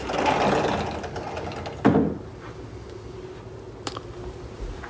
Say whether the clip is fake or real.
real